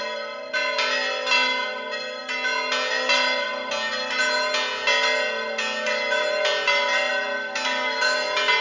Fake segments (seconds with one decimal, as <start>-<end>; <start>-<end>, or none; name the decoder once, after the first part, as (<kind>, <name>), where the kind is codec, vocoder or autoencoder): none